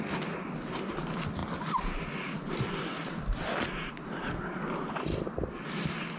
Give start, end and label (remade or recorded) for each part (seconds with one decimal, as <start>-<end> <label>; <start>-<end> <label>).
0.0-6.2 recorded